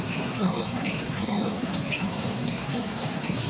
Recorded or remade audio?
remade